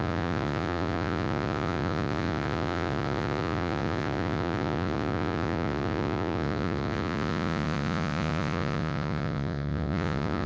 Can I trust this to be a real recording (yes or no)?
no